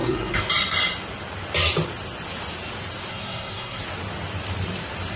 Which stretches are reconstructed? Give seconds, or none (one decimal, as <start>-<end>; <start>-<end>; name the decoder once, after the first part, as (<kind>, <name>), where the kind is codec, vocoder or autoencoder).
0.0-0.5 (codec, SNAC); 3.1-3.8